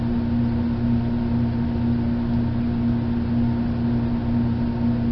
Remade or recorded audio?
recorded